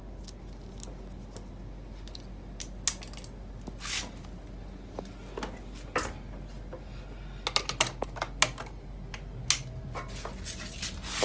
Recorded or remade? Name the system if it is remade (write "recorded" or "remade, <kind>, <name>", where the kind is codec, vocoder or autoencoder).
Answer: recorded